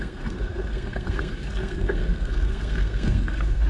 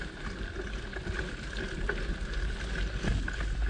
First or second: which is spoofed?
first